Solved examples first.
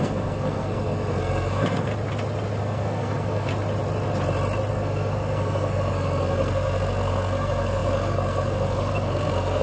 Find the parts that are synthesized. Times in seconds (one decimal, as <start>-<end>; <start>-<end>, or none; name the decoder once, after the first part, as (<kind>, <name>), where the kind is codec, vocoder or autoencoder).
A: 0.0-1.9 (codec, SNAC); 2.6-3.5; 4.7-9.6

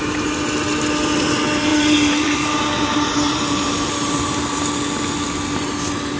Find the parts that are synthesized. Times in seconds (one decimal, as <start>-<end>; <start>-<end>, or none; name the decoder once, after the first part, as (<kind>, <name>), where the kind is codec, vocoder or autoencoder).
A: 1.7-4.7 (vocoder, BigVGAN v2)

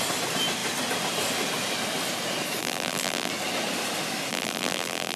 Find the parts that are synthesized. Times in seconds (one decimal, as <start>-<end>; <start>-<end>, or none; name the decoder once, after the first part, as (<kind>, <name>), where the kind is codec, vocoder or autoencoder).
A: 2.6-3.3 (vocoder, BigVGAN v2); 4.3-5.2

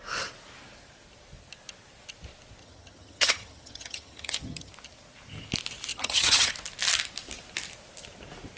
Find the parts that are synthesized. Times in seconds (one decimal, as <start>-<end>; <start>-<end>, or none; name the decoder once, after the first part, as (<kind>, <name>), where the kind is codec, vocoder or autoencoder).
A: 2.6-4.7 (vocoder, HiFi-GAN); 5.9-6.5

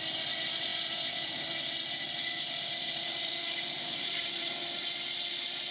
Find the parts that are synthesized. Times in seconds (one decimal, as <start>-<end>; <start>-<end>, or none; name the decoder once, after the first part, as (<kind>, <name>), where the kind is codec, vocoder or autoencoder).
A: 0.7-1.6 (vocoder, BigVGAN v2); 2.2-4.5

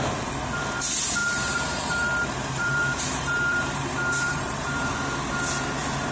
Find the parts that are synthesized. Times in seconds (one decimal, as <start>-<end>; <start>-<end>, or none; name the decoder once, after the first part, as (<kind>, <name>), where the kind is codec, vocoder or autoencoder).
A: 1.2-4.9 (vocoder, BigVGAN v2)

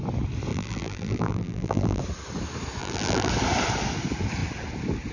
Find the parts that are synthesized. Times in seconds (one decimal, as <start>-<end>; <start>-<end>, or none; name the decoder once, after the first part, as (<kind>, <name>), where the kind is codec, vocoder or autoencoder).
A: 0.5-2.0 (vocoder, BigVGAN v2); 2.8-3.3